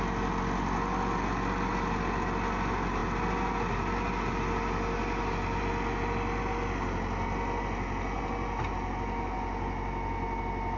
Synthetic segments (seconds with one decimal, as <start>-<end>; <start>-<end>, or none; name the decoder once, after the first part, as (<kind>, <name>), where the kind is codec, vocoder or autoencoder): none